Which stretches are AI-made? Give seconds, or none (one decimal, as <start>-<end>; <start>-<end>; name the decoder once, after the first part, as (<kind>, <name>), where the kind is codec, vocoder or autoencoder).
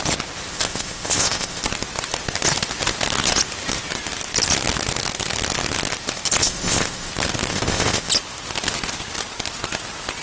0.5-1.6 (codec, ZipCodec); 6.4-7.1; 7.5-8.1